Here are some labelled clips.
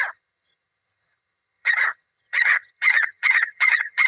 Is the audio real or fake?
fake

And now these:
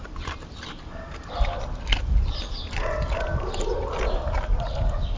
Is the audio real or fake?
real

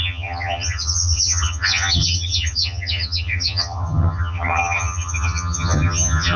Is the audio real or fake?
fake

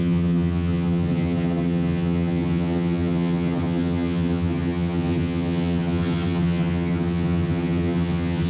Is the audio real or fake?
fake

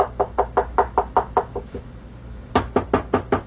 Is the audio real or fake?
real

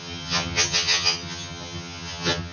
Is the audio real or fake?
fake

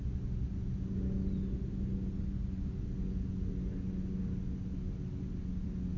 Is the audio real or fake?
real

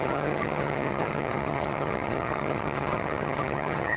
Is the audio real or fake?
fake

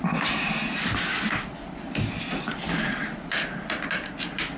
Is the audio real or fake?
real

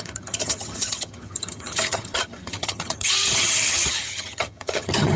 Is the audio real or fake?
fake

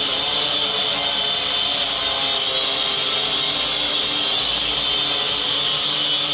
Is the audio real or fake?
real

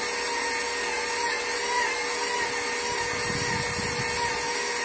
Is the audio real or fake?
real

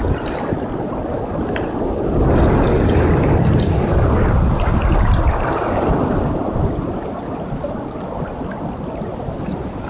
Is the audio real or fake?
real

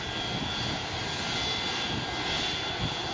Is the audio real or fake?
real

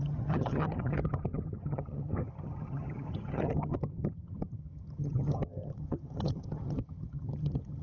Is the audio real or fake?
fake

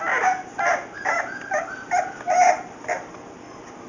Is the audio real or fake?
real